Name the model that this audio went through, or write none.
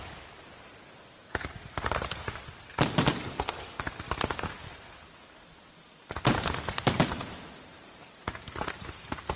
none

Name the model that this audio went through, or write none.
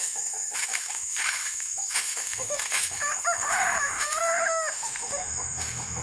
autoencoder, DAC-VAE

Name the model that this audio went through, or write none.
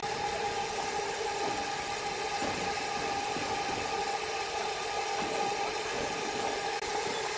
none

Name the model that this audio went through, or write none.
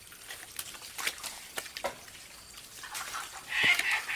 none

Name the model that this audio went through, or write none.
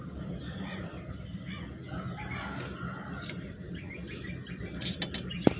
none